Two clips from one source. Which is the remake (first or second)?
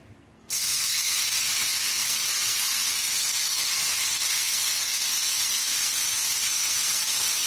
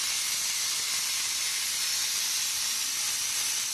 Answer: first